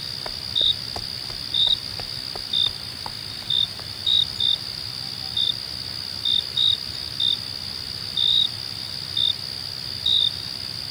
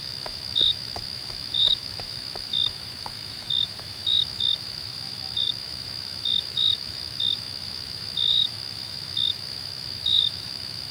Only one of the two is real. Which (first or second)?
first